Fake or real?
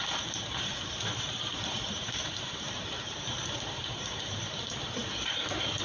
fake